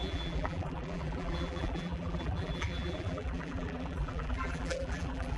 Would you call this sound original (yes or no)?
no